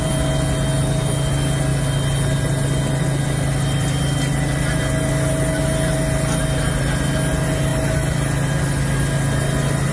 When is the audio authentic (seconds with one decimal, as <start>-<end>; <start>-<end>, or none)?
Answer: 0.0-9.9